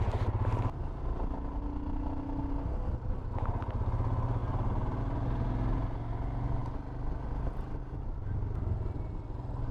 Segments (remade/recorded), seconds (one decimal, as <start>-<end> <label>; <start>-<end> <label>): 0.0-9.7 recorded